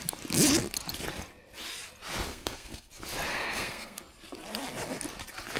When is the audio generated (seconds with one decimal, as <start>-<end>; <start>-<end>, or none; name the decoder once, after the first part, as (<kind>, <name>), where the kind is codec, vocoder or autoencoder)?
2.3-2.9 (codec, SNAC); 3.3-4.0